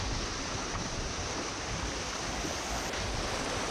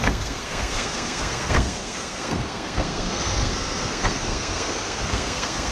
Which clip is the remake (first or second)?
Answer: second